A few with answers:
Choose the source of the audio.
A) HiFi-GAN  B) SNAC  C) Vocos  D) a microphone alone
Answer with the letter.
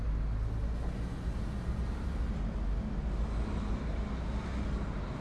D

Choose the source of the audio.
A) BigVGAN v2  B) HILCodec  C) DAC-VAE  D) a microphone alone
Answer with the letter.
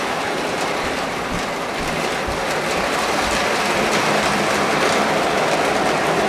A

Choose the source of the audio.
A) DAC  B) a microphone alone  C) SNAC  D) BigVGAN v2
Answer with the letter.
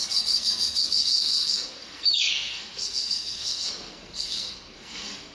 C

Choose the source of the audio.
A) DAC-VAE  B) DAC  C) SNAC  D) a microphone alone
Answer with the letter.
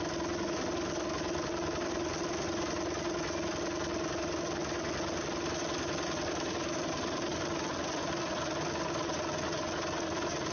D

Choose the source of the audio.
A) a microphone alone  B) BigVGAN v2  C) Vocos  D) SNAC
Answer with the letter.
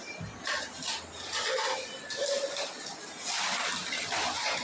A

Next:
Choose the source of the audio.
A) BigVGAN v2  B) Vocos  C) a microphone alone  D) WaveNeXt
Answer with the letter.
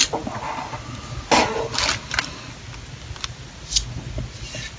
C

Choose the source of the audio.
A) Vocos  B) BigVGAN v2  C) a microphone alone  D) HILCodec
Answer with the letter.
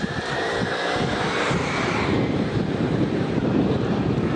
B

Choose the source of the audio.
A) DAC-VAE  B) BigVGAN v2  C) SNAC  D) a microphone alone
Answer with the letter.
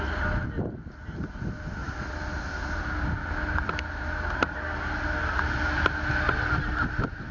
D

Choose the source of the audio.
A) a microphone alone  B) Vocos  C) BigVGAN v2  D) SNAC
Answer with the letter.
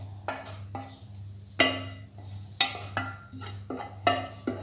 A